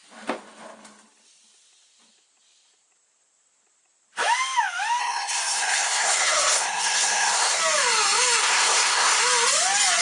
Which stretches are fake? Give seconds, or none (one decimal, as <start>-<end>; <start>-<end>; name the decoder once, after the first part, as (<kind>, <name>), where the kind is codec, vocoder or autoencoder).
5.0-7.6 (codec, SNAC); 8.4-9.2